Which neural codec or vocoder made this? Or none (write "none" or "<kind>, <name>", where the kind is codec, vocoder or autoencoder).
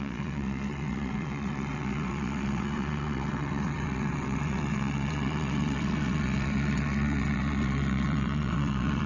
vocoder, WaveNeXt